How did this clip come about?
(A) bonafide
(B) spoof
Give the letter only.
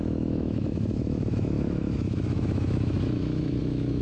B